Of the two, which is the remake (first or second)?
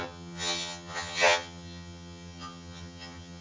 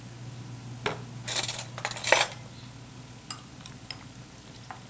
first